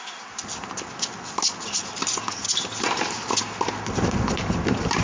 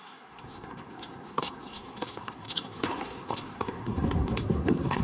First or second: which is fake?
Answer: second